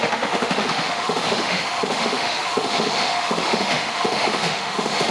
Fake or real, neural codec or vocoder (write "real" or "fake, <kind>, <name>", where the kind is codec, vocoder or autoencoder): fake, autoencoder, DAC-VAE